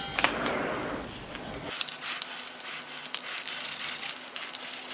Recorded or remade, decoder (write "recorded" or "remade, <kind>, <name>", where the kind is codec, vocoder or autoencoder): recorded